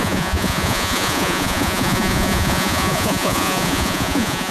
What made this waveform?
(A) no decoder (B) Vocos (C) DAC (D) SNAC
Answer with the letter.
B